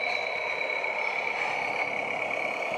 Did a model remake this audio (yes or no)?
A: no